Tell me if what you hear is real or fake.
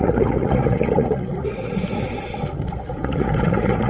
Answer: fake